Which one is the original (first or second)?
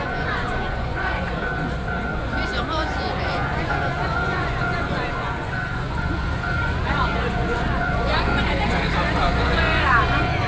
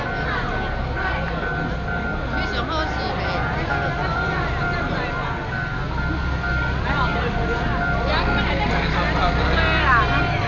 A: second